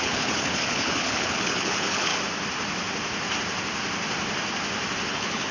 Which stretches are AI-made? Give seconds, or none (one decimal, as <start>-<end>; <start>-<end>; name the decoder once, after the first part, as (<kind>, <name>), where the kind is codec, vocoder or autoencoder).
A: 0.0-2.1 (codec, HILCodec); 5.1-5.5